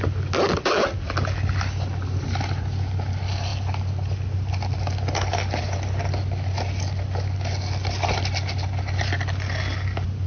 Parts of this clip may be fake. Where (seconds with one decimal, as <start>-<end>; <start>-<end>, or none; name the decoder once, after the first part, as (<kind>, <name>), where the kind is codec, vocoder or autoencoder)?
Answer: none